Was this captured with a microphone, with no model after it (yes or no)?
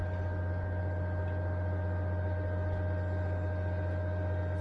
yes